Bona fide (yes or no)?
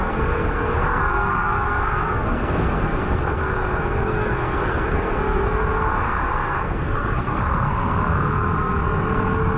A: no